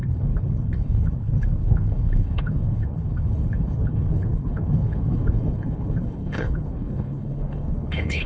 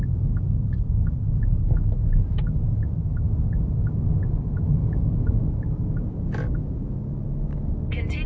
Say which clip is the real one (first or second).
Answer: second